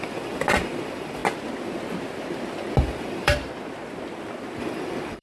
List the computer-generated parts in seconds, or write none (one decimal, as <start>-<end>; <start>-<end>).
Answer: 0.0-1.2; 2.8-3.3; 4.6-5.2